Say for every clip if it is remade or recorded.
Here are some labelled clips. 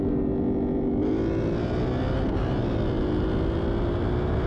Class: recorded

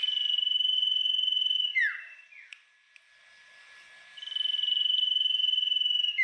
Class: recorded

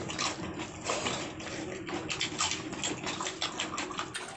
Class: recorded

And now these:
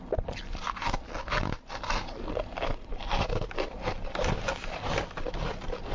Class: recorded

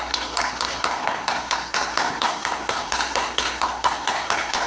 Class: remade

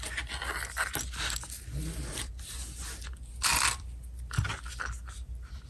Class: recorded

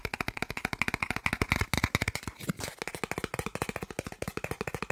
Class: recorded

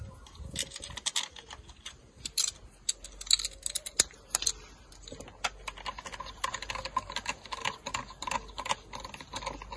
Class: recorded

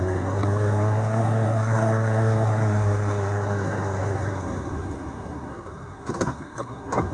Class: remade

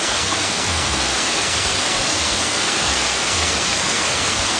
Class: remade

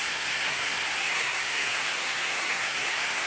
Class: remade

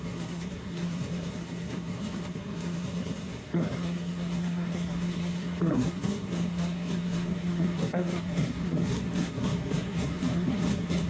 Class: remade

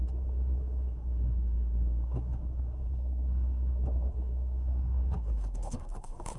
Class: remade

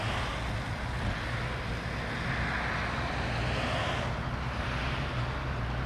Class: recorded